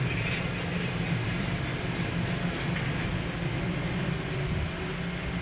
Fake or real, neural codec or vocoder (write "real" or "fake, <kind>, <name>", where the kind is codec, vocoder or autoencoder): real